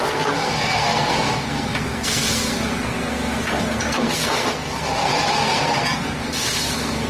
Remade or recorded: remade